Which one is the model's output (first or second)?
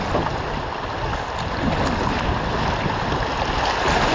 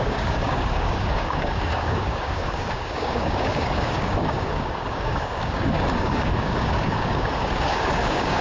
second